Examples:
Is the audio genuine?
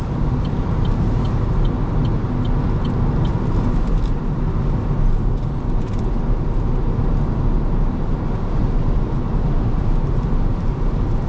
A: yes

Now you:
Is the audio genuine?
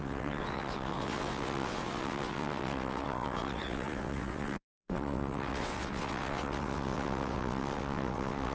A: no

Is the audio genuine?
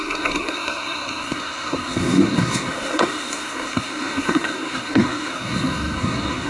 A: no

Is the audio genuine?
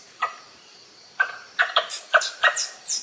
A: no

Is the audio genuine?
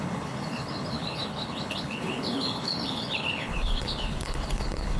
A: no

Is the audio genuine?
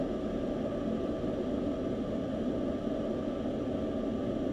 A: yes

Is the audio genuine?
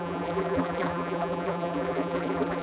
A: no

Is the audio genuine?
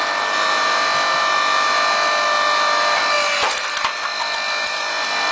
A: yes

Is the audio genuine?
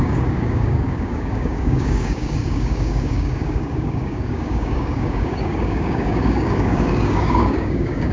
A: no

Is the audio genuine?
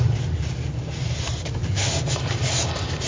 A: yes